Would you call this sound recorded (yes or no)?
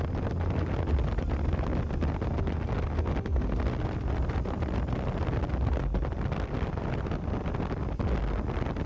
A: yes